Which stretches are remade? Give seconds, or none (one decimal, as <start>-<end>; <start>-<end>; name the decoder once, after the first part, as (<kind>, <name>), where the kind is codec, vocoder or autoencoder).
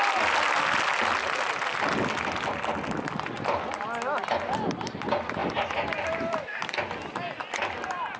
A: 5.4-8.2 (vocoder, BigVGAN v2)